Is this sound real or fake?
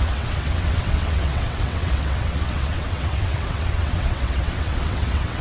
fake